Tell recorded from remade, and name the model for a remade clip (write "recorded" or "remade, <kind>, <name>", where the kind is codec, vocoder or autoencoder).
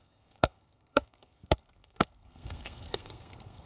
remade, codec, SNAC